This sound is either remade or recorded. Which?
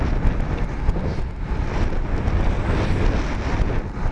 recorded